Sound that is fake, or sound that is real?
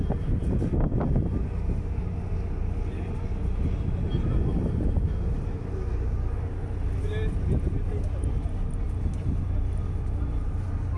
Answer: real